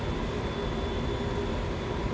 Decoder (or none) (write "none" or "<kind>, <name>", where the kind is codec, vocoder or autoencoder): none